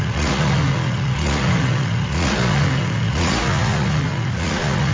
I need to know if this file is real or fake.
fake